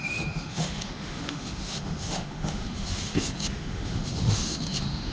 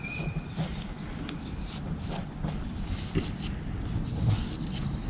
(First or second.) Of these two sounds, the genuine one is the second